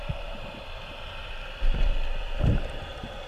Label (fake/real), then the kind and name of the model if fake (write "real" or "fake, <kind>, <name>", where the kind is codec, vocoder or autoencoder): fake, vocoder, BigVGAN v2